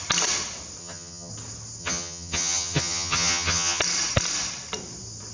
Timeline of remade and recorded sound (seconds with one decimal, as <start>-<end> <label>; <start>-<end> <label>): 0.0-0.8 recorded; 0.8-1.3 remade; 1.3-1.8 recorded; 1.8-3.8 remade; 3.8-5.3 recorded